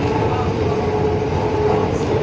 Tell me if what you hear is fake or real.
real